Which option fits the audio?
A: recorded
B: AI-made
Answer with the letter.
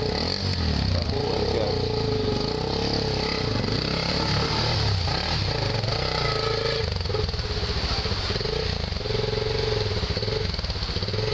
A